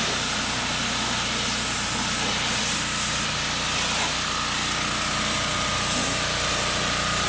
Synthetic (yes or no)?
no